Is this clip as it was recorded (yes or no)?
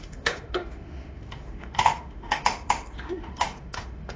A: no